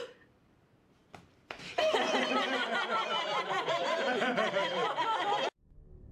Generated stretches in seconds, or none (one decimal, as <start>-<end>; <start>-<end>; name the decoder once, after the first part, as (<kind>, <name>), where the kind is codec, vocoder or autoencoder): 0.0-6.1 (vocoder, BigVGAN v2)